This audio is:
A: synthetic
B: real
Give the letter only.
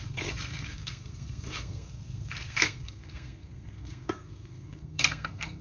A